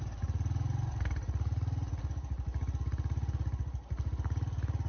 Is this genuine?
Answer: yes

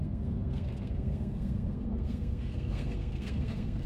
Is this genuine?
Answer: no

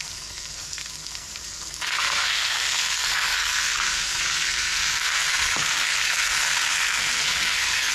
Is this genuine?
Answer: no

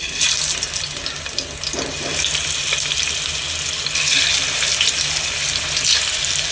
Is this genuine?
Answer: yes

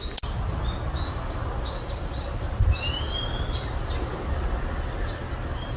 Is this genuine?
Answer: yes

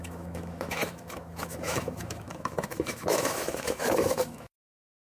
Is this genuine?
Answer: no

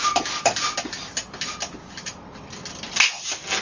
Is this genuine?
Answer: yes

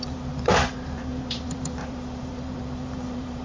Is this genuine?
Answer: no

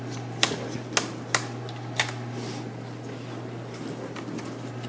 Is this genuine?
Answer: yes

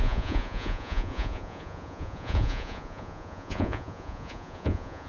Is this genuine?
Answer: no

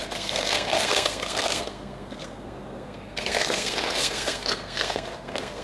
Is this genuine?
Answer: no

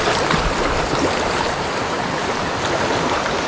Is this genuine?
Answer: yes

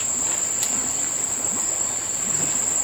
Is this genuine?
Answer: yes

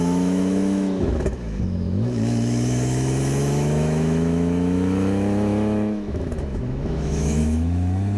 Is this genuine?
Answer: no